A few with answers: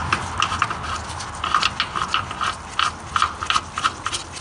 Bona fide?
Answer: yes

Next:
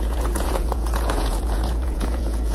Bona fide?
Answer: no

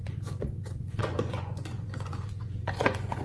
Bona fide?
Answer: no